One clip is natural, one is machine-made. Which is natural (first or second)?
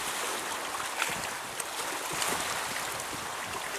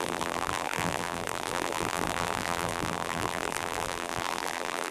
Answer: first